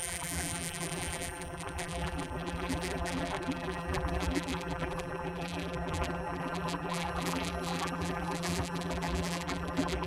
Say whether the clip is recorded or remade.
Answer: remade